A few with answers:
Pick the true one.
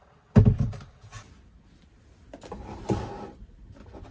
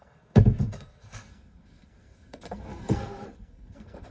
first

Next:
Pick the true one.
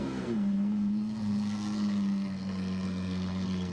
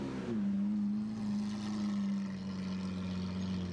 second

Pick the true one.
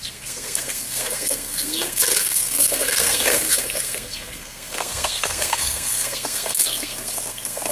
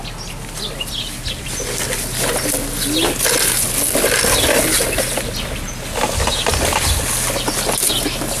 second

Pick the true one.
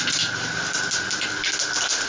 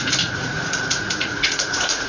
first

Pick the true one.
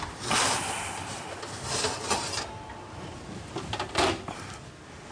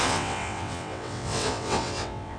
first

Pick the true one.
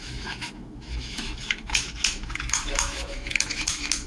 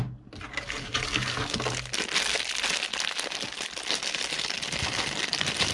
second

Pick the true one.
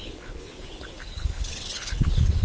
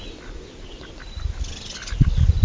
second